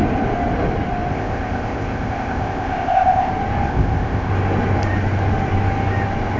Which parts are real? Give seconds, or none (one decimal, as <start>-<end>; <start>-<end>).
0.0-1.1; 3.3-3.7; 4.3-6.4